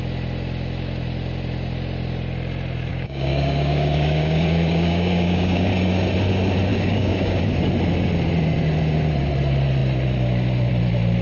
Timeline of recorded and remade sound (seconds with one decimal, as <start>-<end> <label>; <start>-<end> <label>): 0.0-2.9 recorded; 2.9-5.7 remade; 5.7-6.7 recorded; 6.7-7.4 remade; 7.4-11.2 recorded